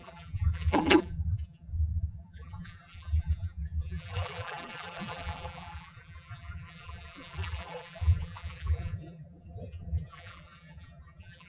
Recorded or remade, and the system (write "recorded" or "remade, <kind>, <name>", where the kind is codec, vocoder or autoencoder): remade, vocoder, BigVGAN v2